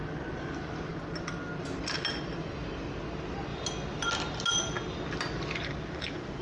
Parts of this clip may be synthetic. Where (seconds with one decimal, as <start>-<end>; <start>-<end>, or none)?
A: none

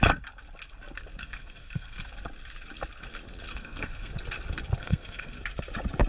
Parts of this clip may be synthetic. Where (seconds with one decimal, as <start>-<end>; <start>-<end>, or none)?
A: 1.2-2.0; 3.5-4.1; 4.8-5.4